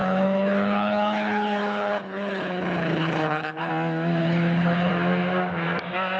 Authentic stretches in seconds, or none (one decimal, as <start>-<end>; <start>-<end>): 3.7-4.2; 4.9-6.2